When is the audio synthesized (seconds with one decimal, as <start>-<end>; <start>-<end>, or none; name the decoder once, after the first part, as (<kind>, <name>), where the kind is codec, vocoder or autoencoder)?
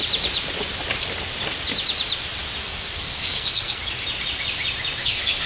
2.6-3.8 (codec, SNAC); 5.0-5.5